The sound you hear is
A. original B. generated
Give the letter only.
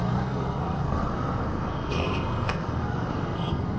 B